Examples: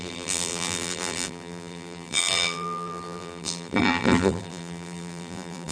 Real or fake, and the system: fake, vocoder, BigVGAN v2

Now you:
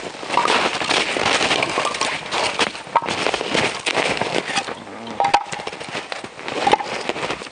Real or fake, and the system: real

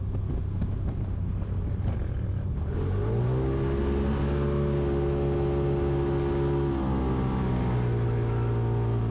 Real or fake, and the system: real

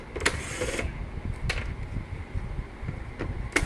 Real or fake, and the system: real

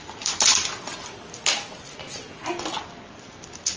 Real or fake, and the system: real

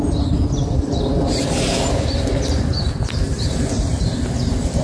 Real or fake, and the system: real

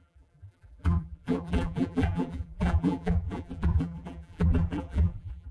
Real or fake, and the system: fake, vocoder, BigVGAN v2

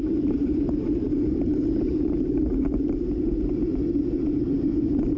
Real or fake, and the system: fake, vocoder, BigVGAN v2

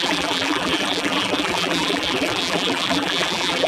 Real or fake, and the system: fake, vocoder, BigVGAN v2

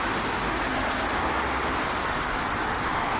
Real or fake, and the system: real